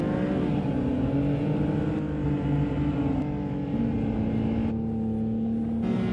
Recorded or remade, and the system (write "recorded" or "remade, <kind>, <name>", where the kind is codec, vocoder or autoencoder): recorded